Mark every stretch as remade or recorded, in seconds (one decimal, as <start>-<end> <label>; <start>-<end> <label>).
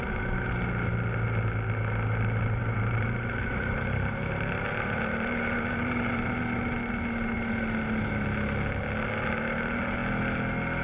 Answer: 0.0-2.6 recorded; 2.6-6.4 remade; 6.4-10.8 recorded